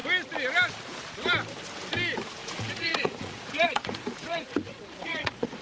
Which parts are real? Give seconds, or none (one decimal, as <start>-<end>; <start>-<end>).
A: 0.0-2.4